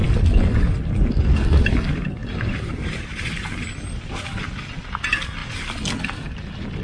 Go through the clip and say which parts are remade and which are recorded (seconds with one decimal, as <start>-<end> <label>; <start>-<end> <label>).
0.0-2.2 recorded; 2.2-3.7 remade; 3.7-6.8 recorded